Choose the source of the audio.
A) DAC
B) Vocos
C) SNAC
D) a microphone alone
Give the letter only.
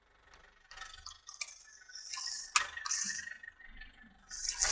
D